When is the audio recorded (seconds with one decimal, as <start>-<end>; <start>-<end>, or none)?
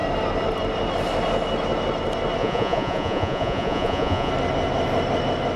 0.0-2.4; 4.3-5.6